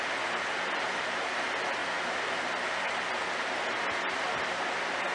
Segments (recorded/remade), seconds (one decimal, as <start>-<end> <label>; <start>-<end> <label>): 0.0-5.1 recorded